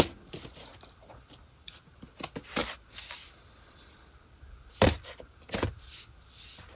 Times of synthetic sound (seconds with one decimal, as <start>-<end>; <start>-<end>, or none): 0.7-1.8; 2.6-6.8